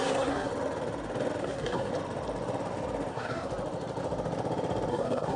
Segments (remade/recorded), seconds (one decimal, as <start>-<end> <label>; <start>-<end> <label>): 0.0-0.5 remade; 0.5-1.4 recorded; 1.4-1.9 remade; 1.9-3.1 recorded; 3.1-3.5 remade; 3.5-4.9 recorded; 4.9-5.4 remade